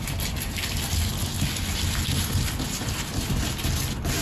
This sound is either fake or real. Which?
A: real